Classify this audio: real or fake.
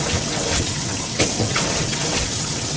fake